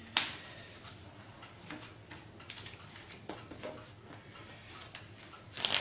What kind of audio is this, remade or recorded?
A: recorded